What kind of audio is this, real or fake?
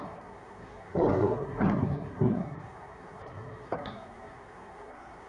fake